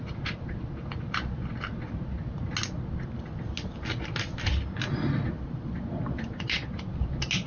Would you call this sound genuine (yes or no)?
yes